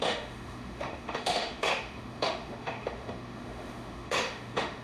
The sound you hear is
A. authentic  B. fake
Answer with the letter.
B